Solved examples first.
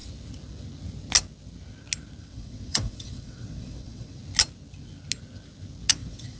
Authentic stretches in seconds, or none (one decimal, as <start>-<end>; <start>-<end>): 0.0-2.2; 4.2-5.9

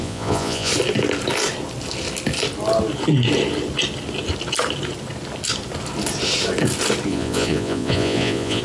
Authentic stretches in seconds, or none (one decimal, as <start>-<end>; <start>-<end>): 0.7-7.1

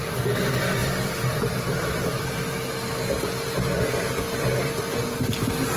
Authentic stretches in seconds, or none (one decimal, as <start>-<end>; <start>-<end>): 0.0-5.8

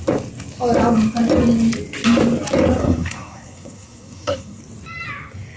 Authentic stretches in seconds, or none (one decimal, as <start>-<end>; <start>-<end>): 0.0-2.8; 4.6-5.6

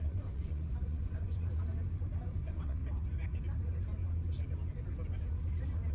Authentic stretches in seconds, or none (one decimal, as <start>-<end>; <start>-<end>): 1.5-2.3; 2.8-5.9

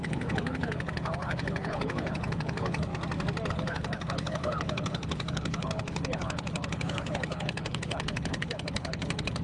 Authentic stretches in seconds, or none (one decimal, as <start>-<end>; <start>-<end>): 2.9-3.5